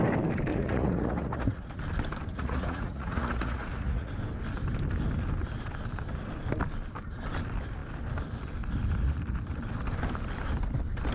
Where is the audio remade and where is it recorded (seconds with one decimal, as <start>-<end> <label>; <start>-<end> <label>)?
0.0-0.5 recorded; 0.5-1.8 remade; 1.8-2.3 recorded; 2.3-4.1 remade; 4.1-11.1 recorded